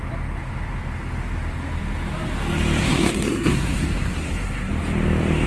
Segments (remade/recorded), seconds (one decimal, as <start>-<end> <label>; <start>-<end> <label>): 0.0-2.8 recorded; 2.8-4.7 remade; 4.7-5.5 recorded